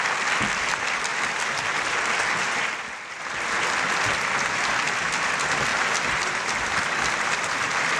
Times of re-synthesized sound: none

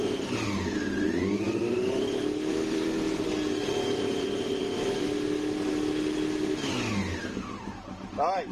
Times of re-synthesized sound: 2.5-4.9 (vocoder, BigVGAN v2); 7.1-7.6

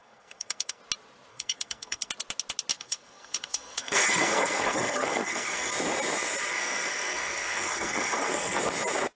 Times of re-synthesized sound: 0.0-0.8 (codec, SNAC); 1.3-2.1; 2.7-5.7; 6.5-8.6

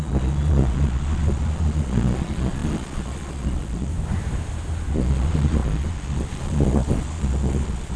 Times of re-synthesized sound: 0.0-3.9 (vocoder, Vocos); 4.9-8.0

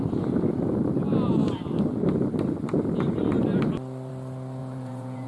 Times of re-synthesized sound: 4.6-5.3 (vocoder, Vocos)